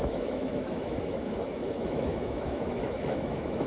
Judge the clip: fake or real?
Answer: fake